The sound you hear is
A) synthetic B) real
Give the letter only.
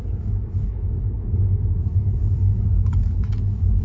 A